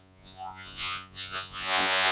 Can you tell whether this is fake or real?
fake